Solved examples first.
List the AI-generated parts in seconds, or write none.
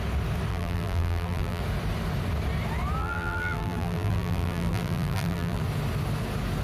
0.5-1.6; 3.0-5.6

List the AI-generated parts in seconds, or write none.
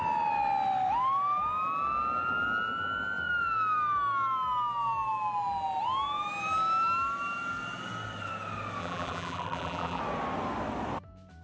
8.8-10.0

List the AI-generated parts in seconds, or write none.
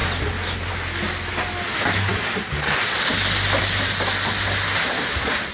none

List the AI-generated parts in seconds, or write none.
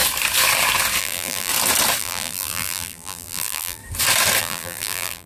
1.0-1.5; 2.0-3.8; 4.4-5.3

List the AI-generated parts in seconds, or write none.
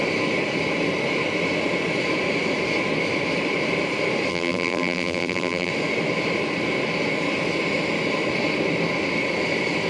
4.3-5.7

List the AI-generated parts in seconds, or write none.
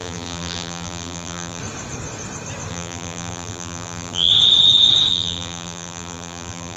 0.0-1.6; 2.7-4.3; 5.1-6.8